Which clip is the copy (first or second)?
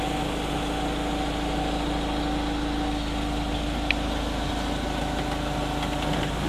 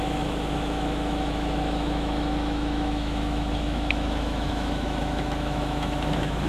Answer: second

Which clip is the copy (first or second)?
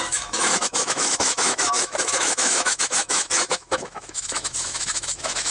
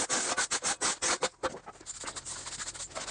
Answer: first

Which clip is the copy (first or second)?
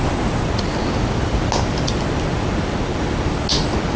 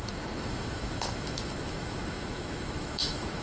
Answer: second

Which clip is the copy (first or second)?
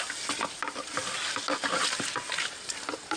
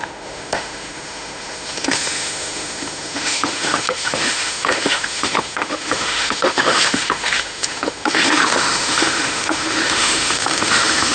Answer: second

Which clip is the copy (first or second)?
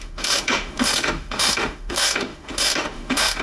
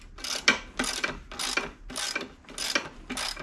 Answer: first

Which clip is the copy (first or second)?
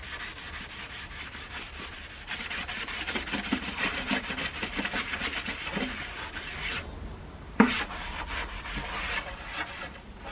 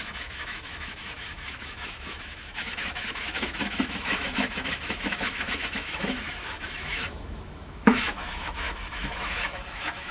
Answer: second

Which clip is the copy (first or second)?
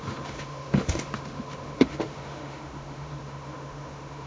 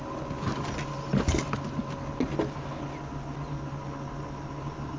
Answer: first